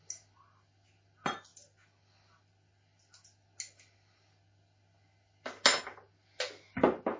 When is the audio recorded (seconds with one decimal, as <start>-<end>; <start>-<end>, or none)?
0.0-7.2

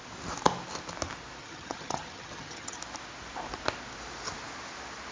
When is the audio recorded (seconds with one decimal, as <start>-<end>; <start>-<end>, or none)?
0.0-1.4; 2.8-5.1

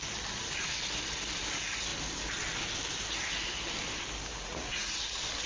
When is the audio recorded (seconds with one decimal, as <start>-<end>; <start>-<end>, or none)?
0.0-4.3; 5.0-5.5

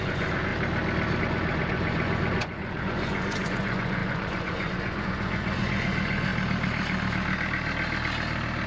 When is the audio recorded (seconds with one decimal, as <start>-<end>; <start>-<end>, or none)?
0.5-1.2; 6.3-8.7

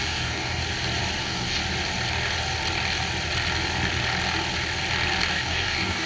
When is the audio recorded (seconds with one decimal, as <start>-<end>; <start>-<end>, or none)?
0.6-1.2; 1.6-5.3

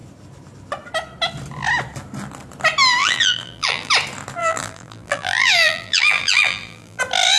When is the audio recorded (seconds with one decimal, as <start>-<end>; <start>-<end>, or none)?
0.0-3.0; 3.9-4.4; 7.0-7.4